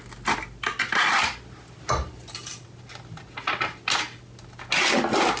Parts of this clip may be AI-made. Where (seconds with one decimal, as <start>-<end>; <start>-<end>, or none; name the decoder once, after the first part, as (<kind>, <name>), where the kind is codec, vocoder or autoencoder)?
none